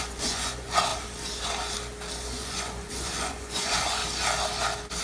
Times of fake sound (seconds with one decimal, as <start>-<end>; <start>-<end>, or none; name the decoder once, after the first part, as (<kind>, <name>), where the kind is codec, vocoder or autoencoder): 0.0-0.9 (vocoder, Vocos); 2.2-4.0